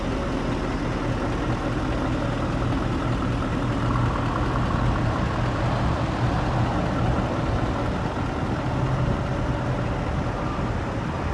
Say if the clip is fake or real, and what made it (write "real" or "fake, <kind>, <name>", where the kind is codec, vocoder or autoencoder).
real